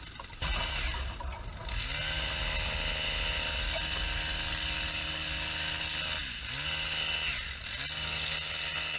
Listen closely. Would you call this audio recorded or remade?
recorded